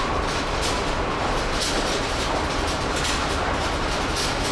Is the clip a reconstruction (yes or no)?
no